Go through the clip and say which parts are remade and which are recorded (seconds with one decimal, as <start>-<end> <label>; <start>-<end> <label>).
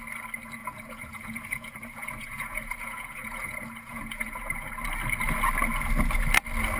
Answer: 0.0-0.6 recorded; 0.6-4.7 remade; 4.7-6.8 recorded